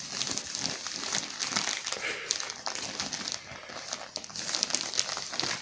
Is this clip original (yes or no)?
yes